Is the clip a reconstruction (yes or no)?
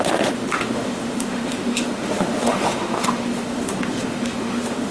yes